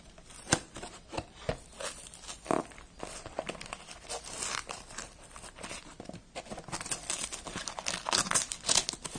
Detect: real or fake real